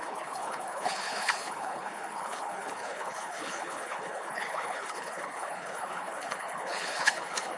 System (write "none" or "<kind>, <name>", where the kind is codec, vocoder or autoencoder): codec, HILCodec